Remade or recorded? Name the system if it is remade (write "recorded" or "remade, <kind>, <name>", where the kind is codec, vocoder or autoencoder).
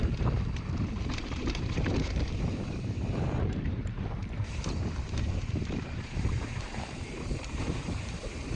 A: remade, vocoder, BigVGAN v2